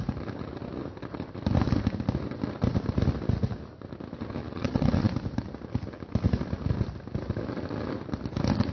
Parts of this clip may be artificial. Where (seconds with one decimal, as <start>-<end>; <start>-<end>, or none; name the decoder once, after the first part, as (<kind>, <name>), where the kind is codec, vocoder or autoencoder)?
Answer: 4.4-5.1 (vocoder, Vocos)